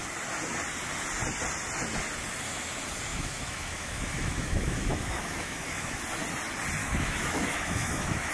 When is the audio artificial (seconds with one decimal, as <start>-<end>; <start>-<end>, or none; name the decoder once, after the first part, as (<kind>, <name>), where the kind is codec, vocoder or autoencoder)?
3.1-6.0 (autoencoder, DAC-VAE); 6.8-8.3